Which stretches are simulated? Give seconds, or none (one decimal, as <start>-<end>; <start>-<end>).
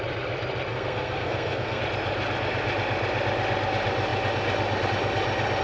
0.7-1.8